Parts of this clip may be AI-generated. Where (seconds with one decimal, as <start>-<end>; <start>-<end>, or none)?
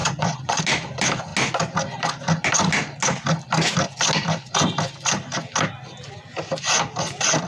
0.0-0.6